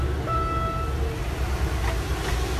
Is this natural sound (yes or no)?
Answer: yes